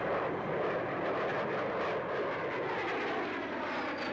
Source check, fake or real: real